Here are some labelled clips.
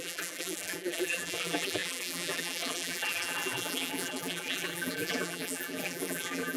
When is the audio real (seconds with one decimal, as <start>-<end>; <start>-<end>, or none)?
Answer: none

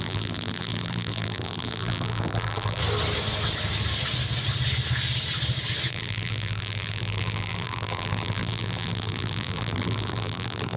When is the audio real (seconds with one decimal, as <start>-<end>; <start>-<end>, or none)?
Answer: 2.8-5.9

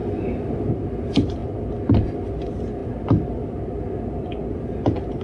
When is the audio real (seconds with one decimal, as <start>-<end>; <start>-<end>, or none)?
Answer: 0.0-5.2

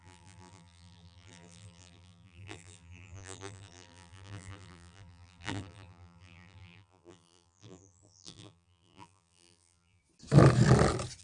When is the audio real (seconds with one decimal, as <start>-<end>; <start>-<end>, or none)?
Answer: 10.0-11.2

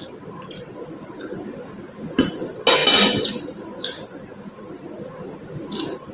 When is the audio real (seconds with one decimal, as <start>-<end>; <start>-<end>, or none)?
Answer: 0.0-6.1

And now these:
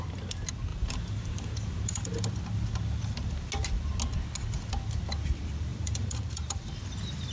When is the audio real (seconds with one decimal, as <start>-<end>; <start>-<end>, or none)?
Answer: 0.0-0.7; 2.1-5.7; 6.8-7.3